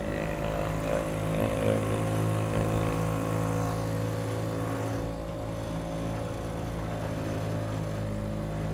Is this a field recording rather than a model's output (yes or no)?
yes